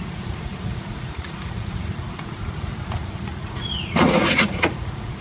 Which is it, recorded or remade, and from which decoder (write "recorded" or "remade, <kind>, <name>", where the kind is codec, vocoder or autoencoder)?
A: remade, vocoder, Vocos